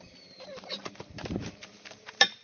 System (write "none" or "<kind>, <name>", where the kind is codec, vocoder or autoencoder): vocoder, BigVGAN v2